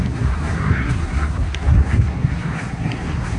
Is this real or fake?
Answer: fake